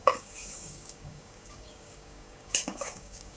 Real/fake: fake